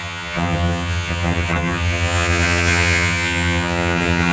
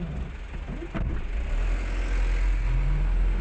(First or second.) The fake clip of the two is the first